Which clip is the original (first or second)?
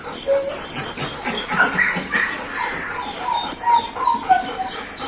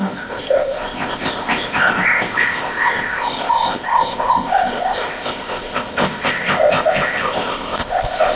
first